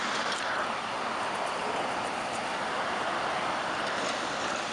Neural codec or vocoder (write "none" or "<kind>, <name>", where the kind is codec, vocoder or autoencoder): none